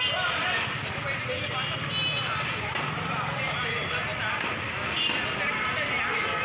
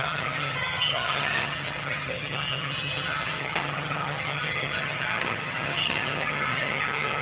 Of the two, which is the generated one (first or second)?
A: second